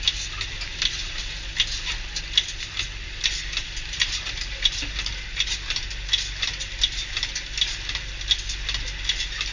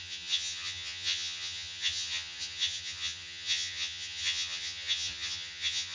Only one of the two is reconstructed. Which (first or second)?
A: second